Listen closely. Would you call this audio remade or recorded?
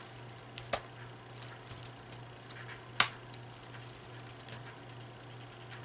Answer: recorded